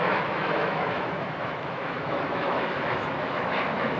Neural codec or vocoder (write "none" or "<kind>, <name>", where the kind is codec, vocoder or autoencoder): autoencoder, DAC-VAE